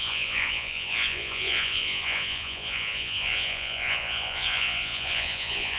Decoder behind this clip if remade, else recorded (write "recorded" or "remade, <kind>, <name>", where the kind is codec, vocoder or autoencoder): remade, vocoder, Vocos